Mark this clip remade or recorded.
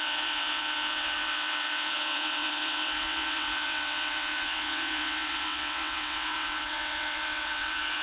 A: remade